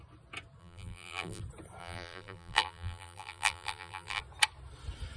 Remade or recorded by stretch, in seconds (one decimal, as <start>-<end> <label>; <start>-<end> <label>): 0.0-0.6 recorded; 0.6-1.4 remade; 1.4-1.8 recorded; 1.8-4.2 remade; 4.2-5.2 recorded